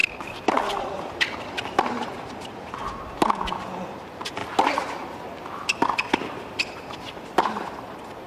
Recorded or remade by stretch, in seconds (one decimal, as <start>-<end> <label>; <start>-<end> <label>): 0.0-0.7 recorded; 0.7-2.8 remade; 2.8-3.9 recorded; 3.9-4.4 remade; 4.4-6.1 recorded; 6.1-8.3 remade

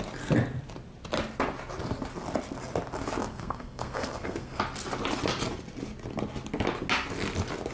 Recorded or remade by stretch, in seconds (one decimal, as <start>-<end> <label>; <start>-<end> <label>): 0.0-3.2 recorded; 3.2-4.6 remade; 4.6-7.7 recorded

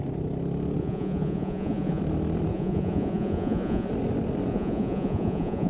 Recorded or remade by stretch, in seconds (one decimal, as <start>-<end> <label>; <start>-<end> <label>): 0.0-0.8 recorded; 0.8-2.0 remade; 2.0-2.5 recorded; 2.5-3.9 remade; 3.9-4.5 recorded; 4.5-5.7 remade

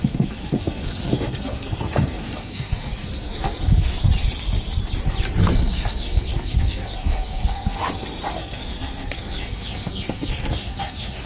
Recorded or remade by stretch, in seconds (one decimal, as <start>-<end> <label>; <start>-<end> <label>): 0.0-3.9 remade; 3.9-5.4 recorded; 5.4-7.8 remade; 7.8-8.4 recorded; 8.4-11.3 remade

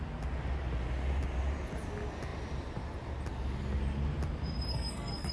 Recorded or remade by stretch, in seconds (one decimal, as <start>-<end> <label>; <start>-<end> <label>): 0.0-4.7 recorded; 4.7-5.3 remade

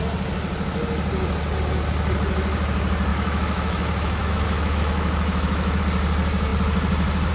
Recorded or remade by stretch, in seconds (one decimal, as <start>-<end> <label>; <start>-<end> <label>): 0.0-3.1 recorded; 3.1-5.8 remade; 5.8-7.3 recorded